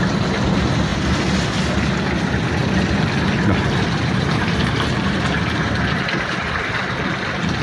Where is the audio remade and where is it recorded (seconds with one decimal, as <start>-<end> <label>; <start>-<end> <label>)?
0.0-4.0 recorded; 4.0-4.9 remade; 4.9-7.6 recorded